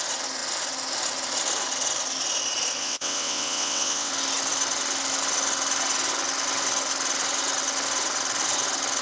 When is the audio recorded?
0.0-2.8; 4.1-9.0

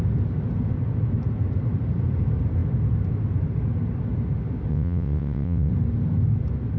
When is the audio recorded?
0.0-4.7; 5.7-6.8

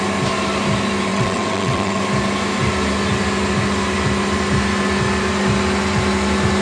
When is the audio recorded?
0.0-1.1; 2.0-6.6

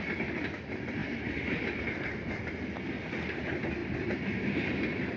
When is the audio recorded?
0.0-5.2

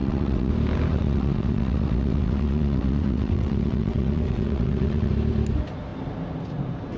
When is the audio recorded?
0.5-0.9; 5.1-7.0

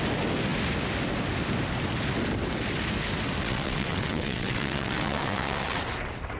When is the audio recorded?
0.0-3.4; 5.8-6.4

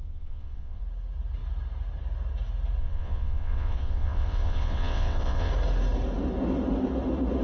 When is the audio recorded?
0.8-2.8; 5.5-7.4

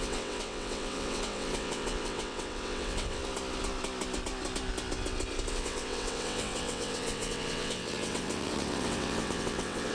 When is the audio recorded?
3.2-5.5